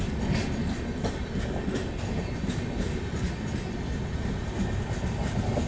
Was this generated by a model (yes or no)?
no